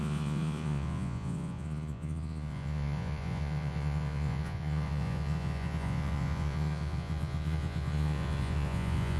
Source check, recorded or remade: remade